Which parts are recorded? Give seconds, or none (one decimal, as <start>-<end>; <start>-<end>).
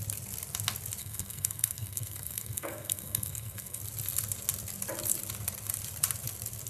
0.0-1.0; 3.8-6.7